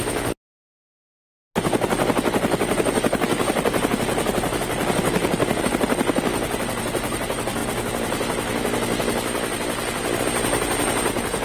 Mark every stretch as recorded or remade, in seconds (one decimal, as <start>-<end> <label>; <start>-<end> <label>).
0.0-11.4 recorded